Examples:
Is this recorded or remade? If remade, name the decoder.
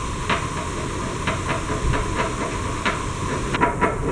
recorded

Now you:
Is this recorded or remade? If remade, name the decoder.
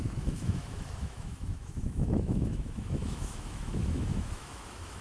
remade, autoencoder, DAC-VAE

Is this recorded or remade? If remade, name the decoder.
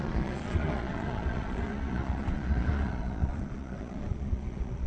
remade, vocoder, Vocos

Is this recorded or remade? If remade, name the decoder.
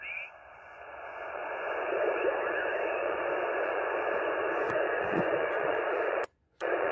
remade, vocoder, Vocos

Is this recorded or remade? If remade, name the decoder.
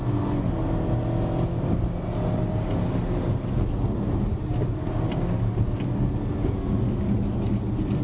recorded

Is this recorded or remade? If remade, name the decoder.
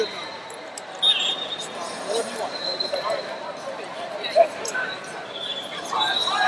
remade, vocoder, BigVGAN v2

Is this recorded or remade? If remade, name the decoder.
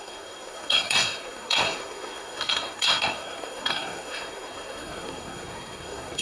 remade, codec, SNAC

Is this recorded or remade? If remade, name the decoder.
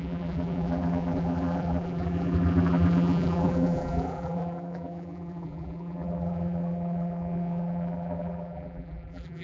remade, vocoder, BigVGAN v2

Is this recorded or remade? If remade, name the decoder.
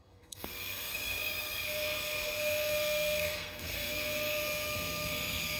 remade, codec, SNAC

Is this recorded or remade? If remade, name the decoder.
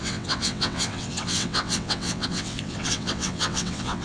remade, vocoder, WaveNeXt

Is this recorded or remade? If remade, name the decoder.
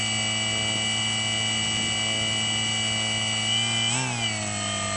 recorded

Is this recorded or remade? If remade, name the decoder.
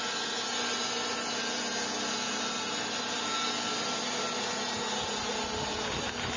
recorded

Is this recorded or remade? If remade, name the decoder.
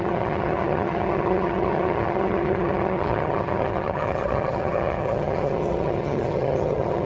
remade, vocoder, HiFi-GAN